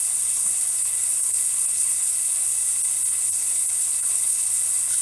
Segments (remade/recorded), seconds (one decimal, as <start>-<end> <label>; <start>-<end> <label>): 0.0-2.5 remade; 2.5-3.1 recorded; 3.1-5.0 remade